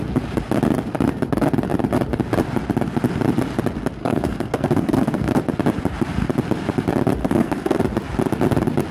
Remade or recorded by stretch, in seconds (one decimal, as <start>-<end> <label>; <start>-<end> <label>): 0.0-4.0 recorded; 4.0-5.4 remade; 5.4-7.2 recorded; 7.2-7.8 remade; 7.8-8.9 recorded